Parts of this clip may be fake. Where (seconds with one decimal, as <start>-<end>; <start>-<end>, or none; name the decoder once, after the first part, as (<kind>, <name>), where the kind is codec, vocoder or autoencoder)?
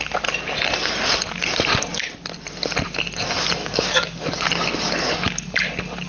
3.6-4.5 (codec, DAC)